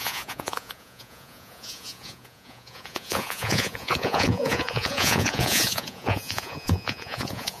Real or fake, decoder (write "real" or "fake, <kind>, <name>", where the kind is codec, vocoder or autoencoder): fake, vocoder, Vocos